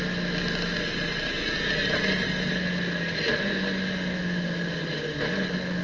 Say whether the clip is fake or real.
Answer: real